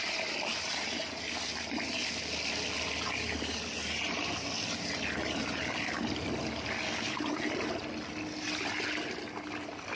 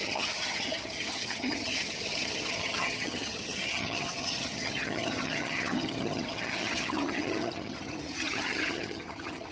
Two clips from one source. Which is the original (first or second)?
first